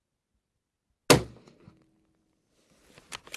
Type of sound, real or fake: real